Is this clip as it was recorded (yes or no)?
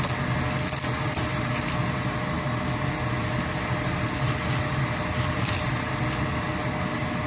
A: yes